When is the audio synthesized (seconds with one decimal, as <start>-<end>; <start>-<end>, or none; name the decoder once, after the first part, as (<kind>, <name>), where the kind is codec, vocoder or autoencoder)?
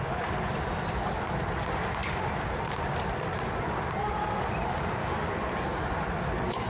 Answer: none